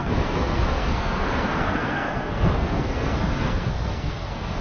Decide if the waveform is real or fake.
fake